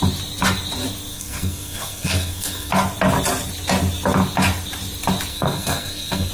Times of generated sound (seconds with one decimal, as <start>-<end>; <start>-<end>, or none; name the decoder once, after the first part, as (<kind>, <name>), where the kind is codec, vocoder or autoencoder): 1.1-2.7 (codec, SNAC); 5.3-6.3